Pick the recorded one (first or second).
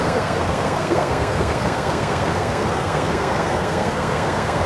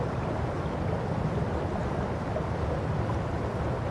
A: second